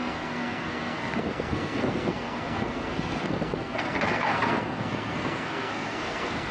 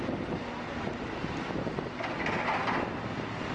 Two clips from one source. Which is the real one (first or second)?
second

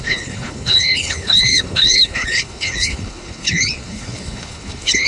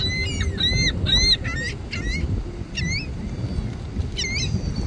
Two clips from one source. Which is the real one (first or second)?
second